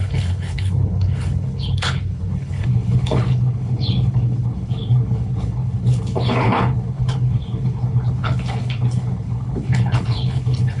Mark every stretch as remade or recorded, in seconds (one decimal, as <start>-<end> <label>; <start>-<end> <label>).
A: 0.0-10.8 remade